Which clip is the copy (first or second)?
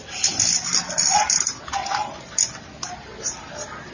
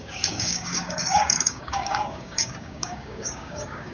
second